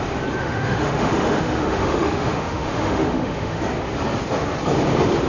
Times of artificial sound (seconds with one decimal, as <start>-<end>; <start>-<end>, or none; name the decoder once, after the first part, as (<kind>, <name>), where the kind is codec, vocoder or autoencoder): 0.4-3.6 (autoencoder, DAC-VAE)